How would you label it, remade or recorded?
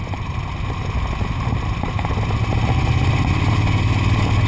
recorded